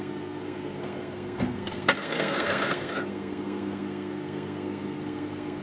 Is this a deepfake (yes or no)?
yes